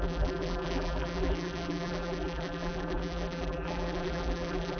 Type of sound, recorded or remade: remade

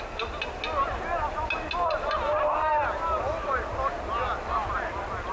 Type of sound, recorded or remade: recorded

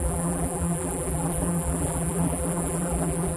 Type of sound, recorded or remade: remade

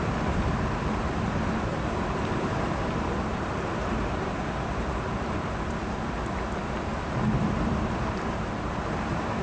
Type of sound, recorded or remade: remade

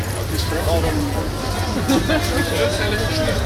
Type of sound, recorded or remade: recorded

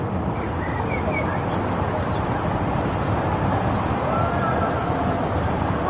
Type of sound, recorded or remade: recorded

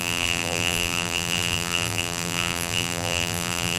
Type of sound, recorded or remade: remade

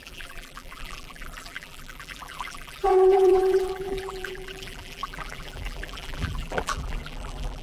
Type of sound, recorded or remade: remade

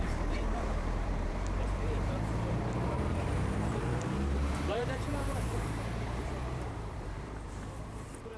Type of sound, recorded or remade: remade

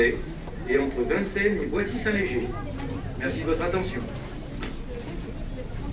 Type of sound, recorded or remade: recorded